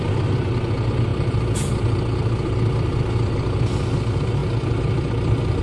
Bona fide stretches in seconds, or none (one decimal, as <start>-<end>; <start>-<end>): 0.0-1.1; 1.7-4.4